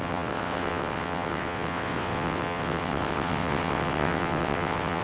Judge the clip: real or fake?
fake